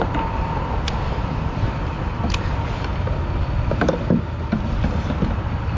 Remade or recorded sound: recorded